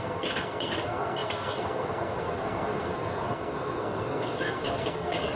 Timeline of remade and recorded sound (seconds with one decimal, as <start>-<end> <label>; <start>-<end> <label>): 0.0-5.4 remade